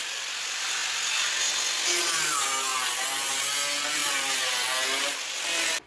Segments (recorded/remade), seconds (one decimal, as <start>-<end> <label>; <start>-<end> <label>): 0.0-0.8 remade; 0.8-2.1 recorded; 2.1-5.9 remade